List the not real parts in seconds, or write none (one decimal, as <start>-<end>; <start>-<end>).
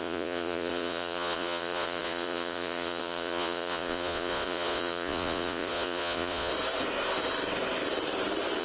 0.0-6.5